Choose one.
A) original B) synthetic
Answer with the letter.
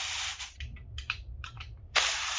B